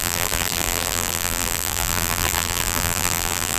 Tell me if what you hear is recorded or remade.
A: remade